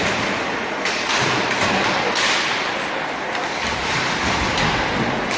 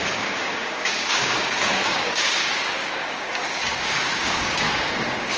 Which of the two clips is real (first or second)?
first